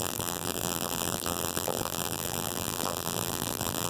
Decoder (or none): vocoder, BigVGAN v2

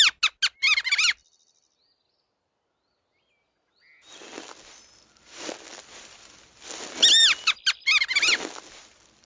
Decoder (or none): none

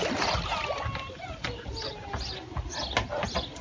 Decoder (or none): none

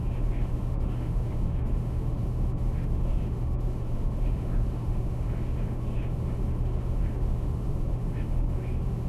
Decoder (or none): autoencoder, DAC-VAE